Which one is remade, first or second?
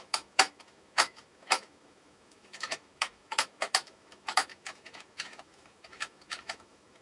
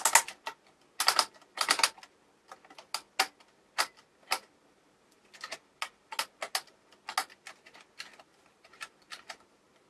first